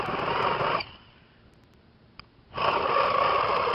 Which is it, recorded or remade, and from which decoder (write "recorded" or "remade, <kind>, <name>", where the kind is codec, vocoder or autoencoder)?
recorded